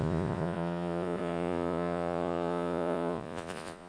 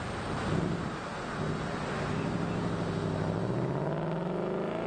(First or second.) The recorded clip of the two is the second